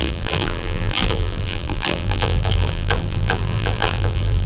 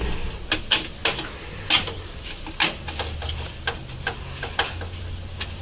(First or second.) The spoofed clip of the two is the first